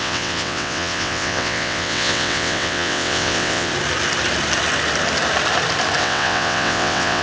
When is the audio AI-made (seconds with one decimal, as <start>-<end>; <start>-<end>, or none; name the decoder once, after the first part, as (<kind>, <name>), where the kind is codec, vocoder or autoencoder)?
0.0-3.7 (vocoder, WaveNeXt); 6.0-7.2

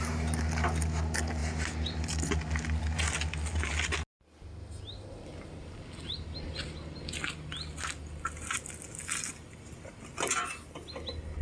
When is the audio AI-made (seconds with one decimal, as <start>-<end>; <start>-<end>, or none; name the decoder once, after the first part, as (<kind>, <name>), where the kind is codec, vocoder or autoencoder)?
none

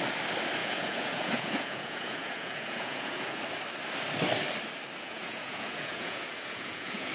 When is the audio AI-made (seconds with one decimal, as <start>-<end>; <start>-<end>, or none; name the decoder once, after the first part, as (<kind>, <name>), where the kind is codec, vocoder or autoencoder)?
0.6-3.4 (vocoder, Vocos); 5.0-7.1

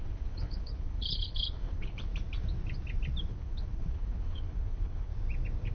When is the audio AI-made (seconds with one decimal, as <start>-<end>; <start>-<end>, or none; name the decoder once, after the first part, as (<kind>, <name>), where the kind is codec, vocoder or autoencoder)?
0.0-2.1 (codec, HILCodec); 3.3-5.1

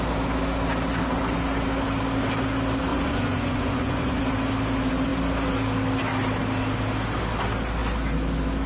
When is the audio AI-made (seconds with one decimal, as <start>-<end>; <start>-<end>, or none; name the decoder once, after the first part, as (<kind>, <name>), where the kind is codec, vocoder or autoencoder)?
2.9-4.2 (vocoder, Vocos)